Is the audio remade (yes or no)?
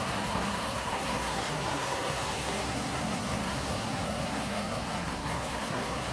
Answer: yes